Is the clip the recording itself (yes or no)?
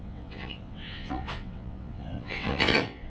no